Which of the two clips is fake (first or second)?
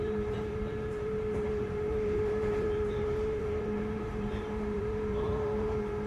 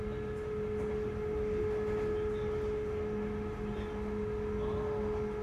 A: first